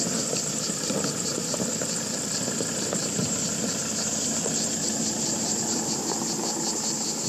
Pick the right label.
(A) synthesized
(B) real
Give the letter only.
B